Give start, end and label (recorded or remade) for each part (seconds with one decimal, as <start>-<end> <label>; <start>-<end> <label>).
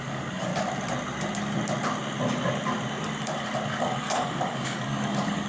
0.0-0.5 remade; 0.5-3.8 recorded; 3.8-5.5 remade